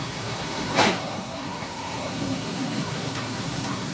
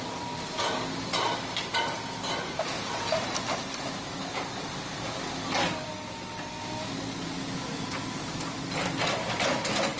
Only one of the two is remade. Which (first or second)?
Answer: first